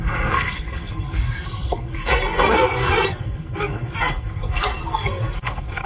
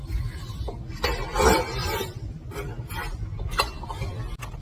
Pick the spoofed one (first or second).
first